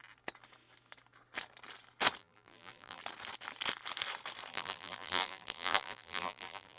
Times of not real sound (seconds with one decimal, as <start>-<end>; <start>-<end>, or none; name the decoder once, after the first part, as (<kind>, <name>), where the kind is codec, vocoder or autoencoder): 2.2-3.0 (vocoder, BigVGAN v2); 4.5-6.8